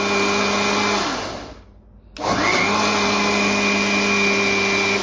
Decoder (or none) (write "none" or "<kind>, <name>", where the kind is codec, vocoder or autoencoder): none